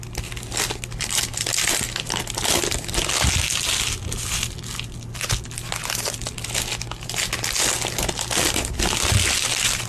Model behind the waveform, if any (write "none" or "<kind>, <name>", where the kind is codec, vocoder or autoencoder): none